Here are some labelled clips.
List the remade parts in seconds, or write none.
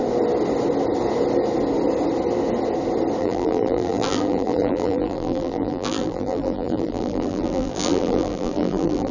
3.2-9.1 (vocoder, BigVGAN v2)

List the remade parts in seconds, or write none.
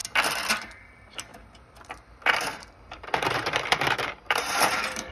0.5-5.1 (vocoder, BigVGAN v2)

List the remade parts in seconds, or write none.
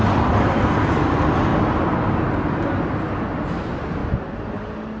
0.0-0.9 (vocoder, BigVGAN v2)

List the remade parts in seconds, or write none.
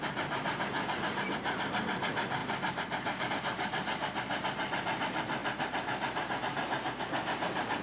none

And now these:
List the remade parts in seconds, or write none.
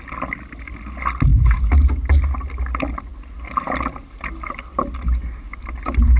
none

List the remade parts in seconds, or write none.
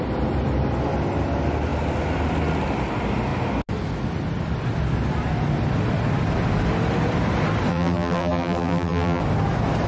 7.7-9.2 (vocoder, BigVGAN v2)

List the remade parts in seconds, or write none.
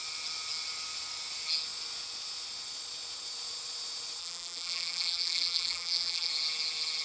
4.2-6.3 (vocoder, BigVGAN v2)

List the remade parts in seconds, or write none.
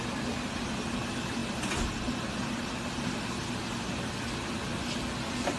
none